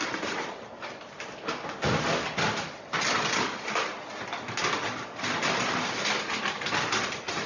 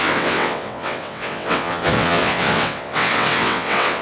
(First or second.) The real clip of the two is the first